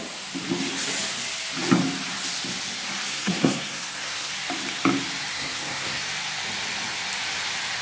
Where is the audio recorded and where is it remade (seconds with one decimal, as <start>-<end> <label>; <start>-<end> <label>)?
0.0-3.1 recorded; 3.1-4.3 remade; 4.3-5.3 recorded; 5.3-6.0 remade; 6.0-7.8 recorded